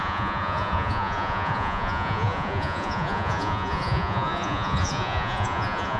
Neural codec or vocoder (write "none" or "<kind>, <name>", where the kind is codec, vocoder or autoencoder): vocoder, Vocos